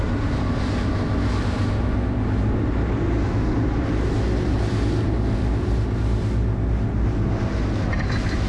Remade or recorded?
recorded